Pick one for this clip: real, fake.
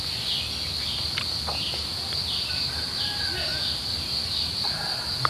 real